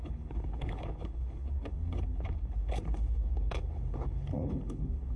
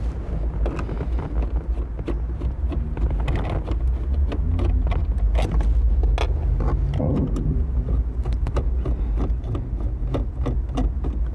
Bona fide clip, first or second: second